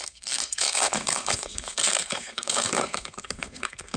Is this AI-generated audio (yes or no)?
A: yes